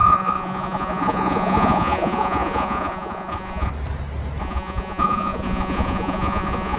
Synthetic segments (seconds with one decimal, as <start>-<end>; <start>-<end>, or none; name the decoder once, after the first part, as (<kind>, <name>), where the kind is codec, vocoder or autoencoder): 0.0-3.7 (vocoder, Vocos); 4.4-6.8

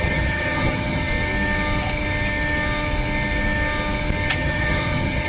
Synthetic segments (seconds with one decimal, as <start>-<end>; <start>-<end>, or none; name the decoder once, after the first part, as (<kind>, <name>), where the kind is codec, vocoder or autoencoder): 0.0-1.1 (vocoder, HiFi-GAN); 4.3-5.3

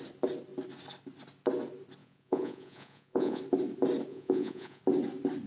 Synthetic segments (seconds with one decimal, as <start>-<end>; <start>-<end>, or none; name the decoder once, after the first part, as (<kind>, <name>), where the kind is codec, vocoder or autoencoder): 2.0-3.4 (vocoder, Vocos); 4.1-4.8

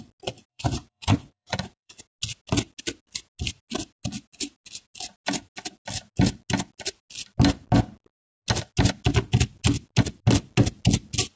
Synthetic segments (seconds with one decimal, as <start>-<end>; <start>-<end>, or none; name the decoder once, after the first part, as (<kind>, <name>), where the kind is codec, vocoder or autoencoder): 0.5-2.0 (vocoder, Vocos)

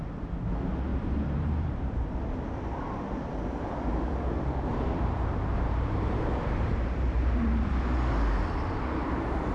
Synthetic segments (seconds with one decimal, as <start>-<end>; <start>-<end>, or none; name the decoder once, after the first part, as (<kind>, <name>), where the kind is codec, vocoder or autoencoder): 0.9-3.0 (vocoder, BigVGAN v2); 4.7-7.7

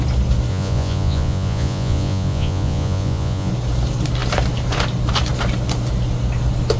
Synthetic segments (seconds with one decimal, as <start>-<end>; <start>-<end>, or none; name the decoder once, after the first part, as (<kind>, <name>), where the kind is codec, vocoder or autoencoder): 0.5-3.5 (vocoder, Vocos)

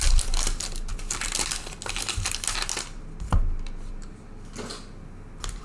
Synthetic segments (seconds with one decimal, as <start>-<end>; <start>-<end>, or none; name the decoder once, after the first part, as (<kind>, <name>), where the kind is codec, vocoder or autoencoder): none